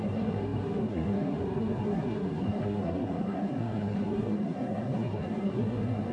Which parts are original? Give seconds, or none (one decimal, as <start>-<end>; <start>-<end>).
none